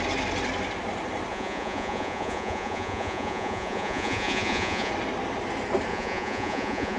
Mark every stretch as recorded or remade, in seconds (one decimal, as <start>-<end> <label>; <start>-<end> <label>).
0.0-1.3 recorded; 1.3-4.9 remade; 4.9-5.9 recorded; 5.9-7.0 remade